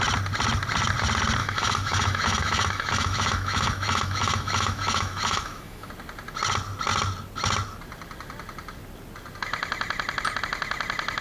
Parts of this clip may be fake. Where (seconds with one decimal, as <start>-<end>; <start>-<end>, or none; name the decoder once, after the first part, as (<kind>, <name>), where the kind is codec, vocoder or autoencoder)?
1.4-5.9 (autoencoder, DAC-VAE)